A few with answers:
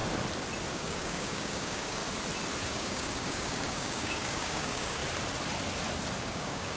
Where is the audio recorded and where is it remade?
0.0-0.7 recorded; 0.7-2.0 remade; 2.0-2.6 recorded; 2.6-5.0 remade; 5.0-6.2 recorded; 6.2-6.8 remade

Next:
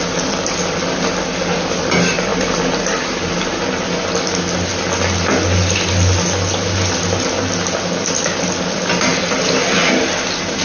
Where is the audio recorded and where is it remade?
0.0-10.6 recorded

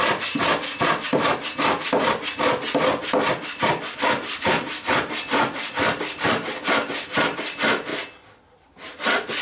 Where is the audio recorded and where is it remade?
0.0-9.4 recorded

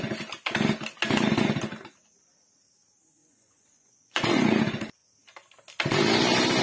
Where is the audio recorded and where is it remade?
0.0-3.2 recorded; 3.2-4.6 remade; 4.6-6.6 recorded